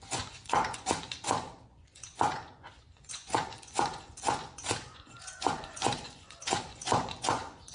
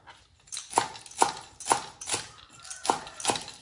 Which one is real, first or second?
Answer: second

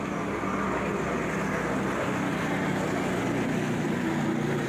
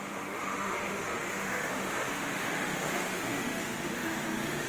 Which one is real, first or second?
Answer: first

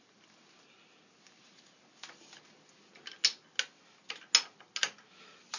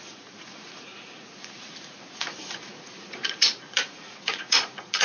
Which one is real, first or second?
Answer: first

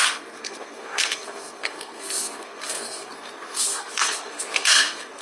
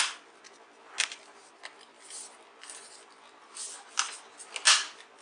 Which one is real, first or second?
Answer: second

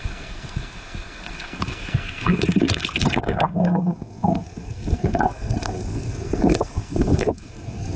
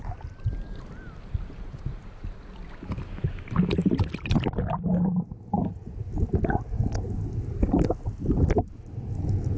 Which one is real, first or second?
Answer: second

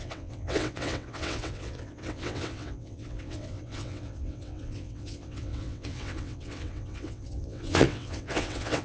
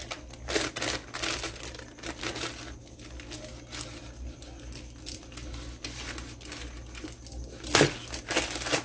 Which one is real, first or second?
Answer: second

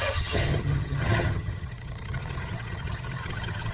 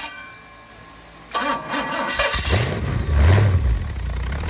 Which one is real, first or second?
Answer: second